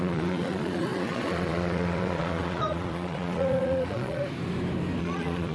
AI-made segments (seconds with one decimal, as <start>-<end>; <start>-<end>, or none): 0.0-4.2; 5.0-5.5